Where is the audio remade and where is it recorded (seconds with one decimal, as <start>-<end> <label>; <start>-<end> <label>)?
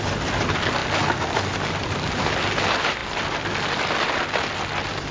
0.0-5.1 recorded